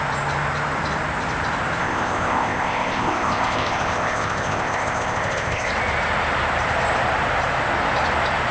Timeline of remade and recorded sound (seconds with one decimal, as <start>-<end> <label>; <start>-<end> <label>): 0.0-1.8 recorded; 1.8-5.7 remade; 5.7-8.5 recorded